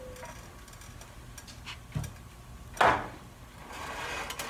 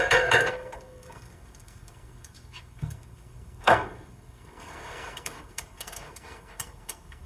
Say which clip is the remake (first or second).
second